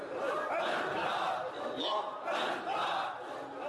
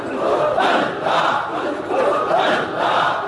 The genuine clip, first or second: first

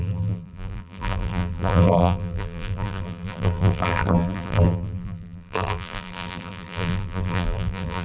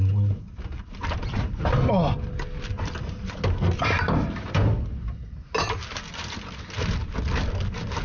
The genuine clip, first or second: second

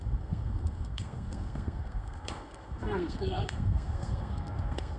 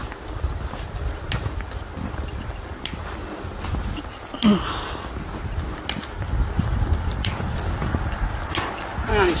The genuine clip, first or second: second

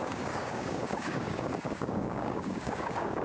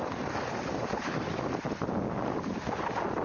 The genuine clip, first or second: second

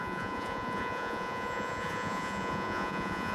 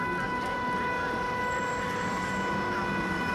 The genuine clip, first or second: second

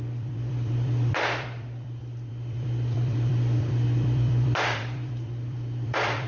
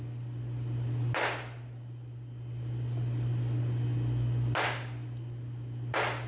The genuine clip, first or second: second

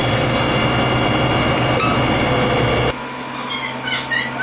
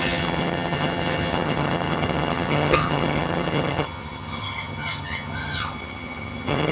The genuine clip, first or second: first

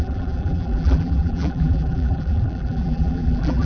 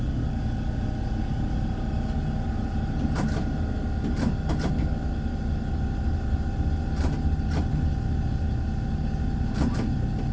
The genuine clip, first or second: second